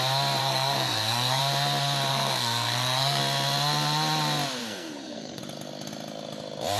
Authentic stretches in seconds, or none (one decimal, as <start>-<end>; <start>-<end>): 0.0-0.4; 1.4-2.1; 3.2-4.6; 5.4-6.8